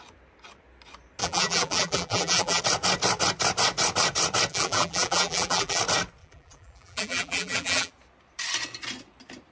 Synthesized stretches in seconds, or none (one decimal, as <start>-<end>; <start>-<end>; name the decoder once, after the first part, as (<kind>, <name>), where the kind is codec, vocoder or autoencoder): 1.2-2.6 (vocoder, BigVGAN v2); 4.5-5.8; 6.2-7.9